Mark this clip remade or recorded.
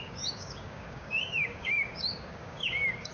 remade